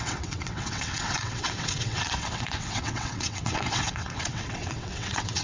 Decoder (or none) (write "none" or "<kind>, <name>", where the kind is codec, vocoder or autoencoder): vocoder, WaveNeXt